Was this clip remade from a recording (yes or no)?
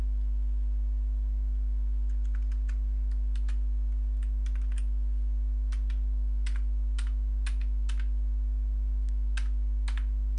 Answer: no